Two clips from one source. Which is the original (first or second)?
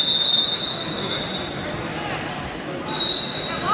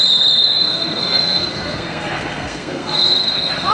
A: first